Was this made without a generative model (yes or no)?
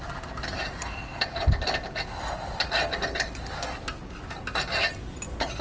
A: yes